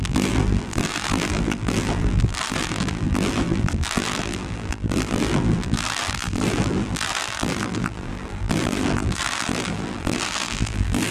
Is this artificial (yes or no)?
yes